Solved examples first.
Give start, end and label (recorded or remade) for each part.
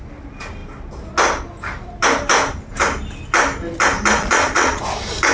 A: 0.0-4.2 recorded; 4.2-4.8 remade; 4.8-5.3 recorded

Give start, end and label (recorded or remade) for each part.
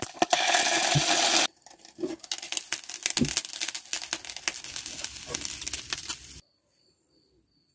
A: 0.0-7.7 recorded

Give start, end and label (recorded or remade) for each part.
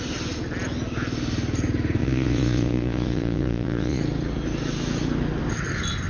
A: 0.0-2.0 recorded; 2.0-4.0 remade; 4.0-6.1 recorded